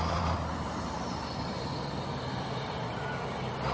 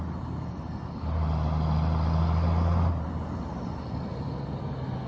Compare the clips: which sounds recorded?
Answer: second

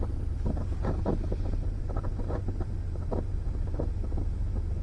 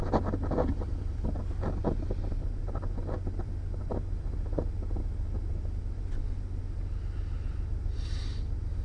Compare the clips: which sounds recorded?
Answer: second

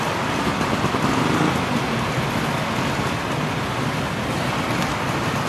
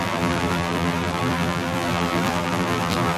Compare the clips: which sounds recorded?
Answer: first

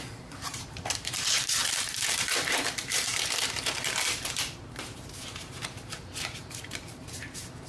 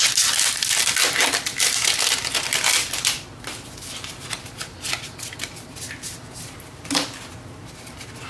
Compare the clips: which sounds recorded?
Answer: second